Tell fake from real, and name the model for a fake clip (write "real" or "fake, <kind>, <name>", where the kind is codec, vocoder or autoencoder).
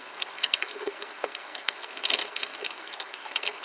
fake, codec, SNAC